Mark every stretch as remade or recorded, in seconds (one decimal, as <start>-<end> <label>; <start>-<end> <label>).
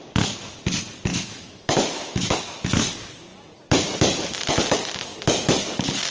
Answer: 0.0-1.1 recorded; 1.1-2.7 remade; 2.7-6.1 recorded